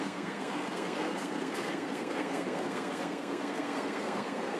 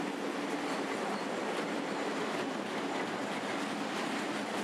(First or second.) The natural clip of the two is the second